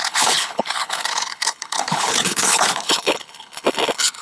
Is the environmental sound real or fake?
fake